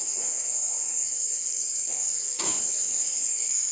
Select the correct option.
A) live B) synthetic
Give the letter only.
B